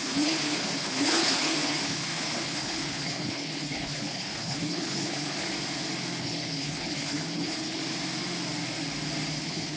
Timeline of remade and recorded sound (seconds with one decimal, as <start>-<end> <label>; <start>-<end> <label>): 0.0-5.5 remade; 5.5-6.2 recorded; 6.2-7.8 remade; 7.8-9.3 recorded; 9.3-9.8 remade

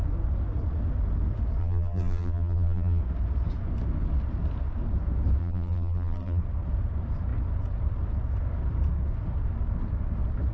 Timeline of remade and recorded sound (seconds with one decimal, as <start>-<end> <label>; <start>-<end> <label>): 0.0-1.6 recorded; 1.6-3.0 remade; 3.0-5.4 recorded; 5.4-6.4 remade; 6.4-10.5 recorded

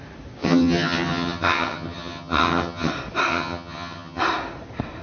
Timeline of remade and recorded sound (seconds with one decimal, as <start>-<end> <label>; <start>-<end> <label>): 0.0-0.4 recorded; 0.4-2.9 remade; 2.9-3.3 recorded; 3.3-4.2 remade; 4.2-5.0 recorded

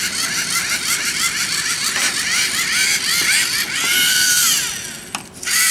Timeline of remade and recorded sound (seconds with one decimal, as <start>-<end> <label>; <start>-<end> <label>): 0.0-3.9 recorded; 3.9-4.7 remade; 4.7-5.7 recorded

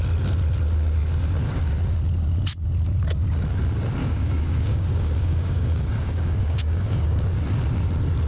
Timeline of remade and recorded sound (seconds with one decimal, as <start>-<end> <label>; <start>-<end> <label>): 0.0-4.0 recorded; 4.0-7.2 remade; 7.2-8.3 recorded